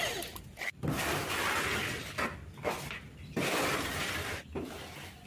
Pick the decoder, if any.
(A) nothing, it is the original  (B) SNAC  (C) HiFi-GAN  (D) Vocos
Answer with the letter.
A